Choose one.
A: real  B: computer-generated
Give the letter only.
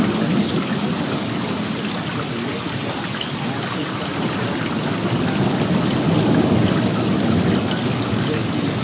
A